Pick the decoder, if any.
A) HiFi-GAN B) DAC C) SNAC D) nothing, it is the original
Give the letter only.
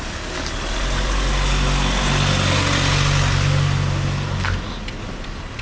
D